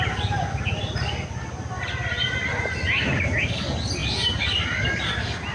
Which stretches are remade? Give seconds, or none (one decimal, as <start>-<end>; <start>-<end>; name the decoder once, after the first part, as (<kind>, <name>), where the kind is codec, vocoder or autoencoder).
none